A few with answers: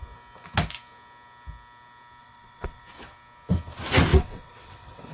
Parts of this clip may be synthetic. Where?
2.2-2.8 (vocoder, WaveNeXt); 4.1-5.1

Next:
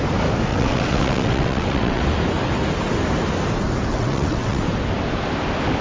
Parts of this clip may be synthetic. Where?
0.5-2.0 (vocoder, WaveNeXt); 3.9-4.6

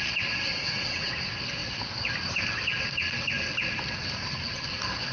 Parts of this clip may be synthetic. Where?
0.5-1.1 (vocoder, WaveNeXt)

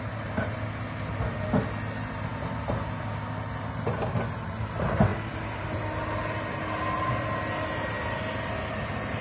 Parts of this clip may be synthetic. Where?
none

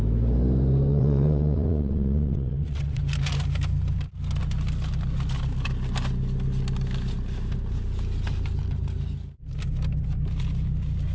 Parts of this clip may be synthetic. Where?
0.9-3.0 (vocoder, WaveNeXt)